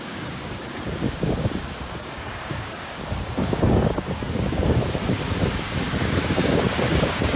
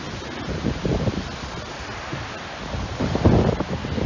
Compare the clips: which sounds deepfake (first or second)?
first